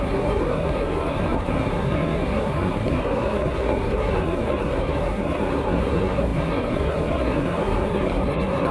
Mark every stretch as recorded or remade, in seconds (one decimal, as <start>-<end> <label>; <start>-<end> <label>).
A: 0.0-8.7 remade